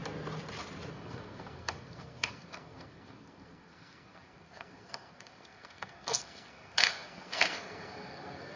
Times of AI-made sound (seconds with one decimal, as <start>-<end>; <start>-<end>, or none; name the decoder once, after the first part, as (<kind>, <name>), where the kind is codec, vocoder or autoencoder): 0.9-8.6 (codec, SNAC)